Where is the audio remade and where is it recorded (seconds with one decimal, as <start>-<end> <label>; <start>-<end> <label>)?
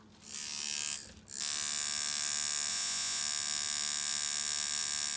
0.0-2.7 recorded; 2.7-3.2 remade; 3.2-5.2 recorded